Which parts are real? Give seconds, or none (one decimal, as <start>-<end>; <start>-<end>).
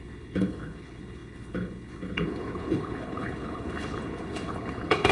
none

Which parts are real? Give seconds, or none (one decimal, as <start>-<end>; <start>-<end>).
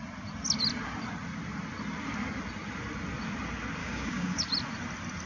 0.0-3.8; 4.4-5.3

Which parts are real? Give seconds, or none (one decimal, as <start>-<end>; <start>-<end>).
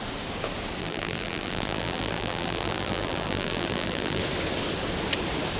0.0-0.8; 4.2-5.6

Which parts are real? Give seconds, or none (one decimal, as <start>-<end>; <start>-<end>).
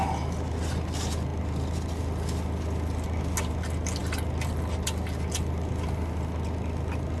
0.0-7.2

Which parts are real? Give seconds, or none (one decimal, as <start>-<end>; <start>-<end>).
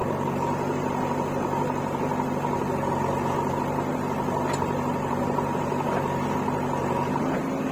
0.0-7.7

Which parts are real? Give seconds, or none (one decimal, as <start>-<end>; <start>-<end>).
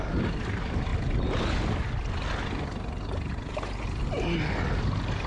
0.0-5.3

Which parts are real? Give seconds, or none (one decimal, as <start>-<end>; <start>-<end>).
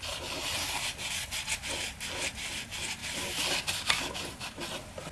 0.0-5.1